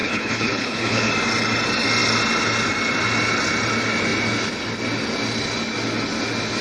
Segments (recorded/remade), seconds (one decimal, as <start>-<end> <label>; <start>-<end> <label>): 0.0-1.1 remade; 1.1-6.6 recorded